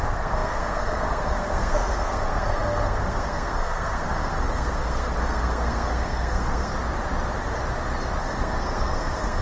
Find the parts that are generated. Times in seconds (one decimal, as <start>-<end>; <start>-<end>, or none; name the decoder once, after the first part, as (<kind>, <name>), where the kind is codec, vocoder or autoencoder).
0.0-6.7 (codec, SNAC); 8.2-9.4